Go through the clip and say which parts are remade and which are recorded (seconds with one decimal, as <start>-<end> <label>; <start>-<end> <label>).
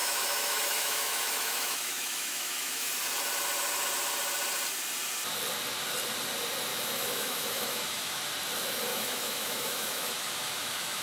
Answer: 0.0-2.9 remade; 2.9-6.7 recorded; 6.7-8.2 remade; 8.2-8.9 recorded; 8.9-11.0 remade